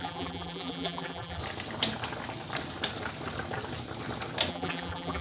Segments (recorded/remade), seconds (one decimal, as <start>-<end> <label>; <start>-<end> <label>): 0.0-1.4 remade; 1.4-4.5 recorded; 4.5-5.2 remade

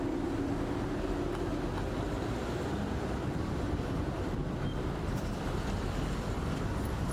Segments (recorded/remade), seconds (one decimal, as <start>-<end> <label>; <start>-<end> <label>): 0.0-4.4 recorded; 4.4-6.6 remade; 6.6-7.1 recorded

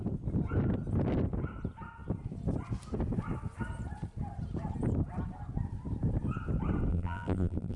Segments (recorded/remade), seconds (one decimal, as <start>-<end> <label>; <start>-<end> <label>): 0.0-6.9 recorded; 6.9-7.8 remade